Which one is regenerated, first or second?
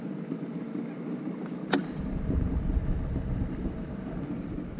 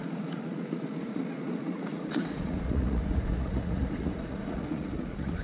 second